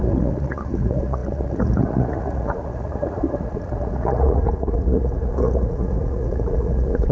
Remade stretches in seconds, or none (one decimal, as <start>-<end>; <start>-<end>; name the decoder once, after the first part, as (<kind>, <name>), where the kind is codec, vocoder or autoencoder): 0.0-7.1 (vocoder, Vocos)